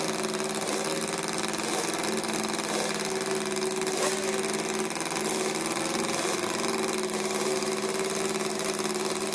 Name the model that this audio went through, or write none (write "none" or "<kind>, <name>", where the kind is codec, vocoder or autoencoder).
none